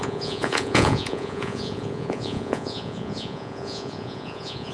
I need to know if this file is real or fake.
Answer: fake